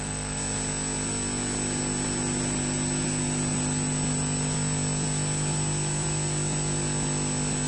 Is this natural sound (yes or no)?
yes